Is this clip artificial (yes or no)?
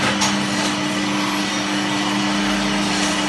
no